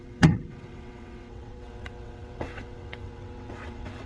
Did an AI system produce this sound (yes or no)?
yes